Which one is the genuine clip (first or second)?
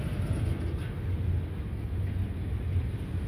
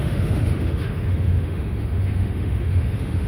first